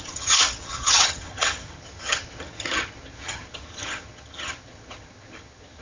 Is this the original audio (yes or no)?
no